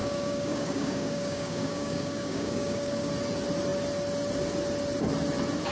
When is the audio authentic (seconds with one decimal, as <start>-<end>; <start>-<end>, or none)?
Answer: 3.1-5.7